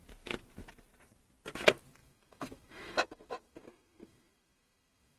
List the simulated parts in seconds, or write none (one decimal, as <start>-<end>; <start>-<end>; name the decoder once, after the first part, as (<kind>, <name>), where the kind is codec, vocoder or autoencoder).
2.0-5.2 (autoencoder, DAC-VAE)